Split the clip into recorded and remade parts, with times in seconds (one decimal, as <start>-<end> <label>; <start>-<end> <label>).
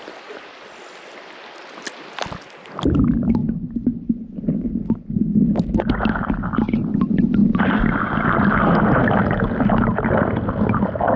0.0-11.2 recorded